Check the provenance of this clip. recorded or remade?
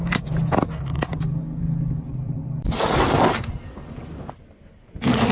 recorded